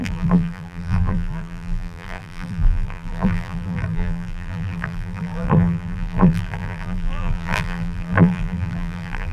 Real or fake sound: fake